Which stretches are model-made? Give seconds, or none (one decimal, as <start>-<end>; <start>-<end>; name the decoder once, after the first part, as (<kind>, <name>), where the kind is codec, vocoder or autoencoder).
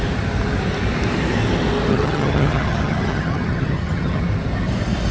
1.9-4.2 (vocoder, HiFi-GAN)